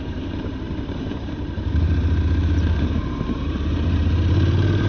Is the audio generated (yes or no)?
yes